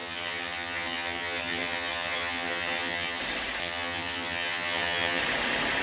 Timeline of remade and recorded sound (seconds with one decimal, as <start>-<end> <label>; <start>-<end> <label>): 0.0-3.2 remade; 3.2-3.6 recorded; 3.6-5.2 remade; 5.2-5.8 recorded

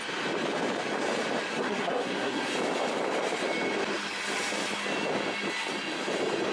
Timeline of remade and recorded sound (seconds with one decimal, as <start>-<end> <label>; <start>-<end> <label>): 0.0-1.5 recorded; 1.5-2.5 remade; 2.5-6.5 recorded

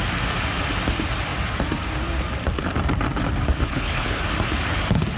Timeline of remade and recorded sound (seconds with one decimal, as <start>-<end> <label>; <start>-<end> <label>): 0.0-3.7 recorded; 3.7-4.2 remade; 4.2-5.2 recorded

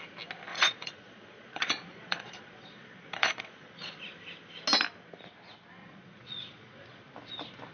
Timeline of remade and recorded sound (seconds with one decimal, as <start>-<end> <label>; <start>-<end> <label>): 0.0-0.5 recorded; 0.5-4.0 remade; 4.0-5.8 recorded; 5.8-7.0 remade; 7.0-7.7 recorded

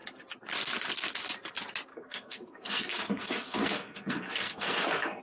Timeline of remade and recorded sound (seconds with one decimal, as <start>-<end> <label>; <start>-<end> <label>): 0.0-1.9 recorded; 1.9-5.2 remade

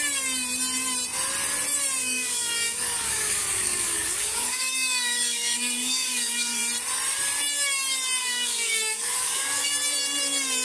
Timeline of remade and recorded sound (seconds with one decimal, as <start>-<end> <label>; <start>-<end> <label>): 0.0-2.0 recorded; 2.0-6.6 remade; 6.6-8.2 recorded; 8.2-9.7 remade; 9.7-10.6 recorded

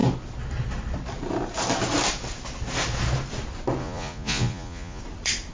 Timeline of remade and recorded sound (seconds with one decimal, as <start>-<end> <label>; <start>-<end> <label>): 0.0-3.8 recorded; 3.8-5.0 remade; 5.0-5.5 recorded